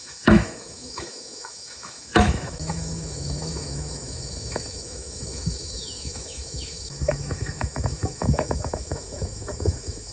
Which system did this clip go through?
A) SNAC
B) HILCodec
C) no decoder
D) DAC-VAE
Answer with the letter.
D